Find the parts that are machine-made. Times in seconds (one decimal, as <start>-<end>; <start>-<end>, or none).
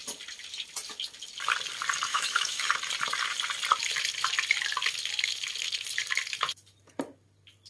2.1-2.7